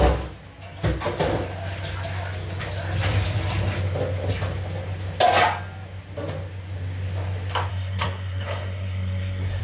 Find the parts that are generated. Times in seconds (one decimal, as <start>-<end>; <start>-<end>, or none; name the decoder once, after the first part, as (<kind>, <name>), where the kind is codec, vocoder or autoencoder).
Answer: 7.7-9.6 (codec, SNAC)